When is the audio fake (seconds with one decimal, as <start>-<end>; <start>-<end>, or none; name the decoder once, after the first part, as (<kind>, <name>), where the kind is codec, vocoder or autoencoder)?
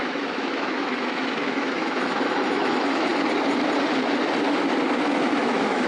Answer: 0.0-3.1 (autoencoder, DAC-VAE); 5.0-5.9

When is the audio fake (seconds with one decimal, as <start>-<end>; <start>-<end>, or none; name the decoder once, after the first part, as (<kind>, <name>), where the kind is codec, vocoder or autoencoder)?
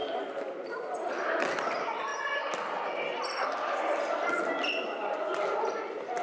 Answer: 0.0-1.1 (vocoder, BigVGAN v2)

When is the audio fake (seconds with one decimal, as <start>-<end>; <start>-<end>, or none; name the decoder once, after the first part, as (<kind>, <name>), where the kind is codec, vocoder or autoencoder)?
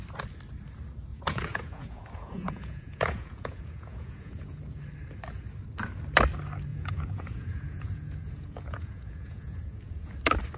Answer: 1.1-4.6 (vocoder, Vocos); 6.7-10.1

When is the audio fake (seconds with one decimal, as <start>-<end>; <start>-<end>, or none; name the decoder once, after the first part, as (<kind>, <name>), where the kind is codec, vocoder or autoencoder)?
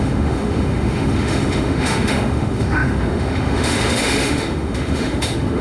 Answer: 0.0-5.6 (autoencoder, DAC-VAE)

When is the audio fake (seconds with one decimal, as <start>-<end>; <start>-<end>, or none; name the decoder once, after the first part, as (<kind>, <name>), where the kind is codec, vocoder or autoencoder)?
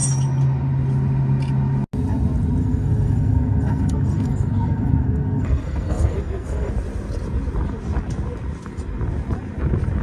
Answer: 2.6-6.7 (codec, SNAC)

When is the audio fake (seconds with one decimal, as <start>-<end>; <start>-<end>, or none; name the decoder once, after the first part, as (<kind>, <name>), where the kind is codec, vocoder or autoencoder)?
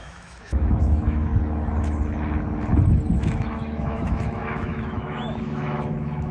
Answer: 0.0-1.3 (autoencoder, DAC-VAE); 3.2-6.3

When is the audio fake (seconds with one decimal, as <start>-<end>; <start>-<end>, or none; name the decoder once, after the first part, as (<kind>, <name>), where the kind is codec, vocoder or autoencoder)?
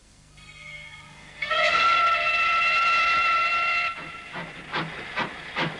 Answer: 0.0-2.0 (codec, SNAC)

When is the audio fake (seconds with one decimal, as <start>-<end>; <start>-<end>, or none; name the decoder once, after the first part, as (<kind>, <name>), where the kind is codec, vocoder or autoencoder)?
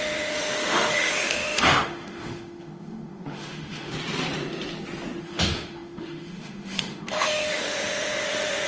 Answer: 0.0-3.9 (autoencoder, DAC-VAE); 5.2-8.7